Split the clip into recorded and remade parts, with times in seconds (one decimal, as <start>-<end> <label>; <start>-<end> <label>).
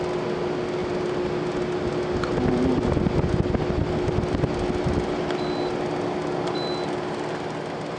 0.0-8.0 recorded